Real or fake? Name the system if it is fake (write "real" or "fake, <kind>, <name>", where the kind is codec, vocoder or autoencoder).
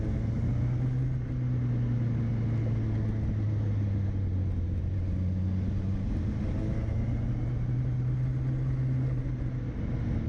real